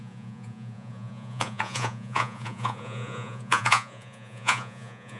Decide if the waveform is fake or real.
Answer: fake